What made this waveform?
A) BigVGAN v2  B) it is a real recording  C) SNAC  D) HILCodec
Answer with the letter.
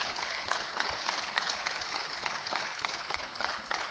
D